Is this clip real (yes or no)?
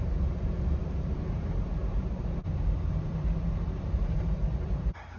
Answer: no